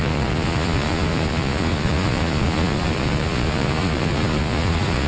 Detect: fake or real fake